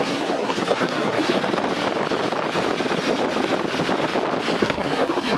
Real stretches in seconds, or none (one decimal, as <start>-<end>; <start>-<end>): 1.4-4.6